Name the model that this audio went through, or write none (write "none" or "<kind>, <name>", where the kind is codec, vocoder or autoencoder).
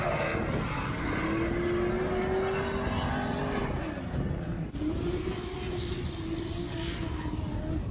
none